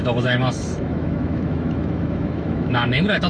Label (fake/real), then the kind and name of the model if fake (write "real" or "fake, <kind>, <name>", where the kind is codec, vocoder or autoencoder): fake, autoencoder, DAC-VAE